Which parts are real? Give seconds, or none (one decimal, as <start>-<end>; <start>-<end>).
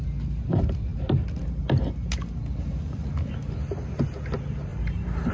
0.0-4.7